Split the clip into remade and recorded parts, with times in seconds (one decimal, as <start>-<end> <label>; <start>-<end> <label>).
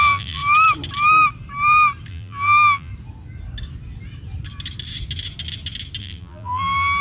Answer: 0.0-0.4 remade; 0.4-2.1 recorded; 2.1-2.9 remade; 2.9-6.0 recorded; 6.0-7.0 remade